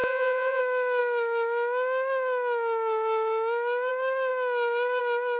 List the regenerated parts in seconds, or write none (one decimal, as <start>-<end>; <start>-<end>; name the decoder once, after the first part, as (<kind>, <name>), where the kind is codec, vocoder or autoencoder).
0.0-0.6 (vocoder, Vocos)